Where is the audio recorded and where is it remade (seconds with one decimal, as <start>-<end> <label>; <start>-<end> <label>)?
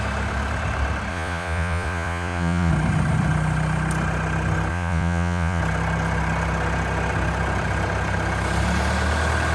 0.0-1.1 recorded; 1.1-2.7 remade; 2.7-4.7 recorded; 4.7-5.6 remade; 5.6-9.5 recorded